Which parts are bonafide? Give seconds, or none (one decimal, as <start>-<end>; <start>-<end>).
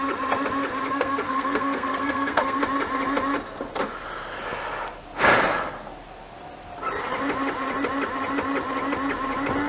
0.0-0.9; 2.6-9.7